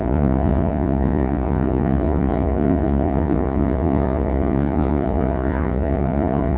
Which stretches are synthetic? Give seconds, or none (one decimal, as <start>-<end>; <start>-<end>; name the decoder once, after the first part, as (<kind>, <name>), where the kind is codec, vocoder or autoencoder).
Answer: 0.0-6.6 (vocoder, Vocos)